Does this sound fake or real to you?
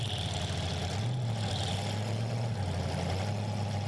real